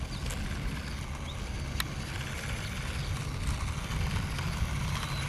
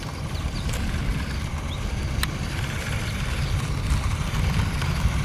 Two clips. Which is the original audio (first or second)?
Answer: first